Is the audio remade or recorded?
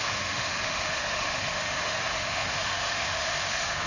remade